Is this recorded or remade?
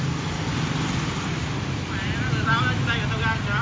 recorded